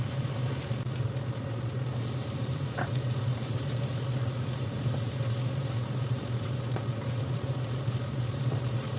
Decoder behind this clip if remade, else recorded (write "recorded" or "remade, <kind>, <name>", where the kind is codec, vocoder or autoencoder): remade, vocoder, BigVGAN v2